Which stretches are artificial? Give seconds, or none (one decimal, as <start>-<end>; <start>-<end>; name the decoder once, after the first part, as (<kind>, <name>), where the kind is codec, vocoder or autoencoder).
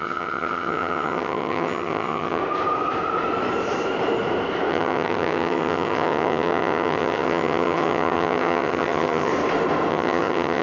0.0-2.4 (vocoder, HiFi-GAN); 4.7-9.3; 9.9-10.6